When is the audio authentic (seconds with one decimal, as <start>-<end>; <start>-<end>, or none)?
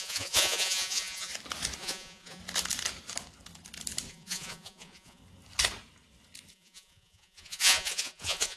1.3-1.8; 2.4-4.1; 5.2-6.5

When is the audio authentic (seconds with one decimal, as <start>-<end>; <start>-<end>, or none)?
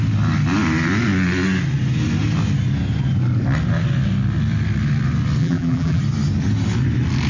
0.0-5.4; 6.0-7.3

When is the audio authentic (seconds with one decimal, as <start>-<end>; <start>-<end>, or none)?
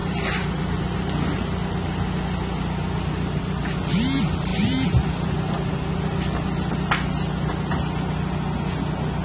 0.0-4.5; 6.8-9.2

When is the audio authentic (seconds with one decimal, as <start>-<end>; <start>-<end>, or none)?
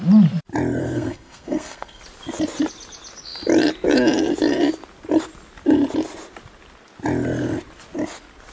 0.0-0.8; 2.0-8.5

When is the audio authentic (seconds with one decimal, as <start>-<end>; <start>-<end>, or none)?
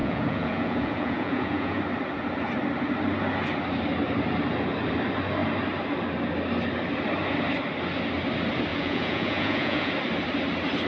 1.8-8.7; 9.9-10.9